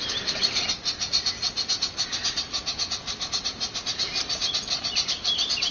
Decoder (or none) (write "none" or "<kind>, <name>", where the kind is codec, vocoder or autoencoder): none